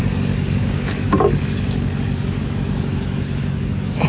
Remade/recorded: remade